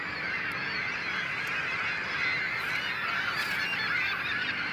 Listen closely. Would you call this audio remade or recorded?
recorded